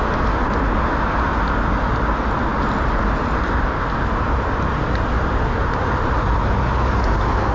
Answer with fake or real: real